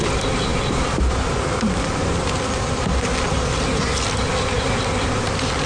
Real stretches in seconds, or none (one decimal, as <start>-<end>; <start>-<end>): 0.0-5.7